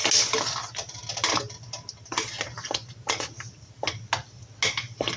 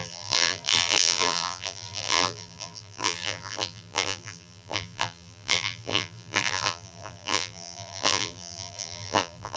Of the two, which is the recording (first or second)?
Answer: first